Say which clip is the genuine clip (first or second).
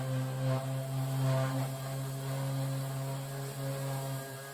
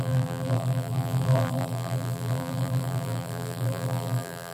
first